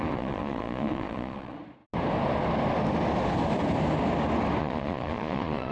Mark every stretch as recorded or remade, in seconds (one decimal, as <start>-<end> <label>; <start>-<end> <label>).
0.0-1.8 remade; 1.8-4.6 recorded; 4.6-5.7 remade